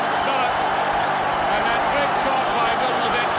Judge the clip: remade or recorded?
recorded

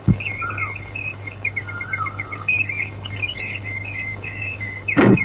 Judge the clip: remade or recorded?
remade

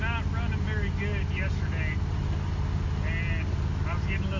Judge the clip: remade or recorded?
recorded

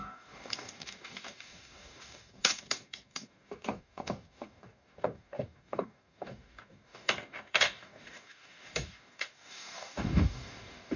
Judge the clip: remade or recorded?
remade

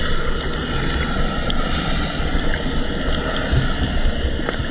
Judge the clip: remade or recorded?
recorded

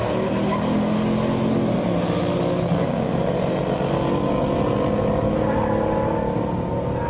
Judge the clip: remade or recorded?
recorded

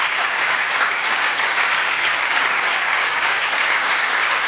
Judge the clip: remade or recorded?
remade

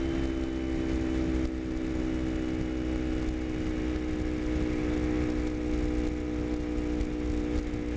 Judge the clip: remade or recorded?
recorded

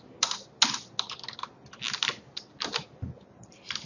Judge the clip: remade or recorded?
recorded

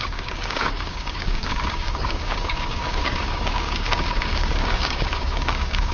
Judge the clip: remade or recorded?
remade